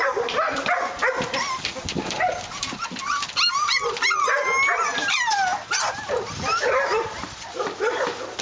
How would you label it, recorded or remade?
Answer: recorded